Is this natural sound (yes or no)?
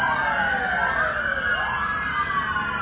yes